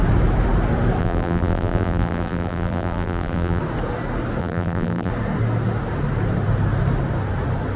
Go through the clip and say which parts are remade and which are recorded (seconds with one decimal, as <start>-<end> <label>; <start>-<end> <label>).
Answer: 0.0-1.0 recorded; 1.0-3.6 remade; 3.6-4.4 recorded; 4.4-5.1 remade; 5.1-7.8 recorded